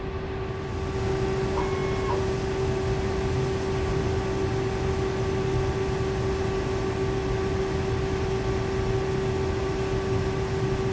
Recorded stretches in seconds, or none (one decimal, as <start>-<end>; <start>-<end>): 0.0-10.9